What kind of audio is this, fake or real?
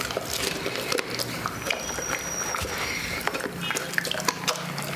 real